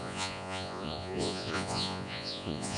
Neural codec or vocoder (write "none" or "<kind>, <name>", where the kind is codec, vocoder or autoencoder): vocoder, Vocos